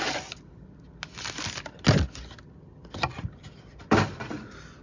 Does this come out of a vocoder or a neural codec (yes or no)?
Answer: no